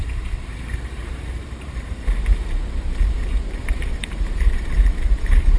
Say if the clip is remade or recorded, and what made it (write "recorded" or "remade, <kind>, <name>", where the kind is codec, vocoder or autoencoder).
remade, vocoder, BigVGAN v2